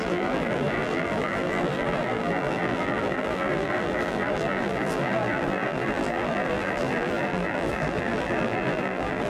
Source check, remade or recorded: remade